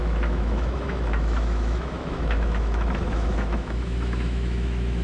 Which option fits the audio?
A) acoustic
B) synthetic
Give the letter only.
B